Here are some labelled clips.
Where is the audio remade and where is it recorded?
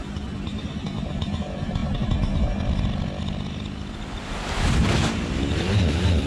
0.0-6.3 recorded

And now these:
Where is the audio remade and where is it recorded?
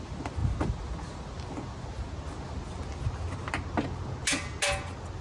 0.0-5.2 recorded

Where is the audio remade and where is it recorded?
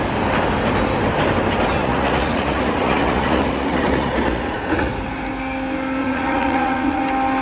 0.0-1.8 recorded; 1.8-4.9 remade; 4.9-6.0 recorded; 6.0-7.0 remade; 7.0-7.4 recorded